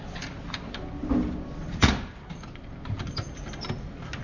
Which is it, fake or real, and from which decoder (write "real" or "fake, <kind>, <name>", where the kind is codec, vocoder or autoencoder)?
real